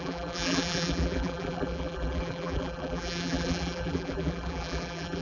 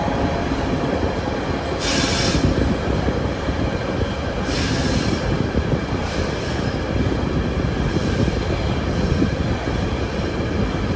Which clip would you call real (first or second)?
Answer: second